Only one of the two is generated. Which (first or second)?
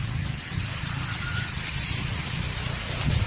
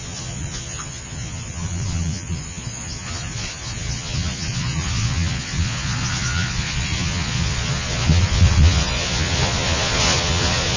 second